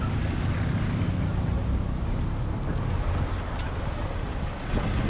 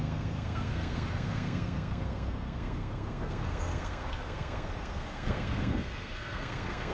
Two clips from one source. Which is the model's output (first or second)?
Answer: second